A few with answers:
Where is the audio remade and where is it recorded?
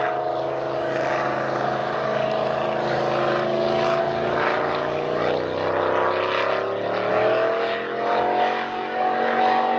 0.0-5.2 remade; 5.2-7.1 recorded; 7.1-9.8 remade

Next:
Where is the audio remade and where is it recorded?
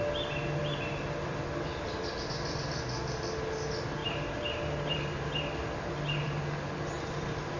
0.0-0.6 recorded; 0.6-2.1 remade; 2.1-4.0 recorded; 4.0-7.6 remade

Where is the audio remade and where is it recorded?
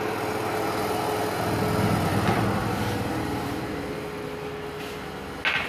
0.0-5.7 recorded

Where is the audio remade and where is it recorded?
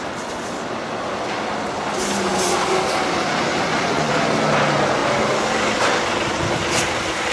0.0-3.5 recorded; 3.5-4.1 remade; 4.1-7.3 recorded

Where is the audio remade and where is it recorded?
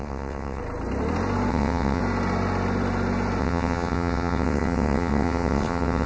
0.0-0.6 remade; 0.6-1.5 recorded; 1.5-2.0 remade; 2.0-3.4 recorded; 3.4-6.1 remade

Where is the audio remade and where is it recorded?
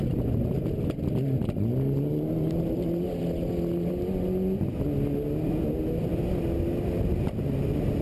0.0-8.0 recorded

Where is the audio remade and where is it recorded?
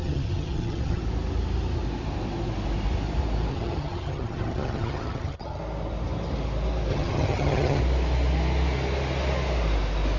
0.0-1.0 remade; 1.0-3.5 recorded; 3.5-5.6 remade; 5.6-6.9 recorded; 6.9-7.8 remade; 7.8-10.2 recorded